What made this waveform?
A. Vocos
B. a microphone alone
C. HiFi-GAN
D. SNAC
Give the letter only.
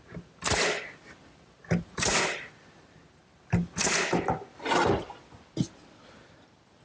B